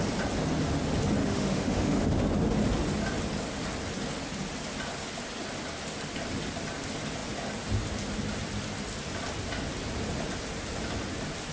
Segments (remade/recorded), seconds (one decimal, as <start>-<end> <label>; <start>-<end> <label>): 0.0-1.2 recorded; 1.2-2.3 remade; 2.3-11.5 recorded